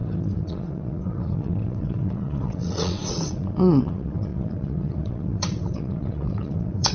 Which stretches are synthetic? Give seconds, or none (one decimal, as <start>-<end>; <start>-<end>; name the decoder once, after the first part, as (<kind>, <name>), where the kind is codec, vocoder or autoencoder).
0.0-6.9 (vocoder, WaveNeXt)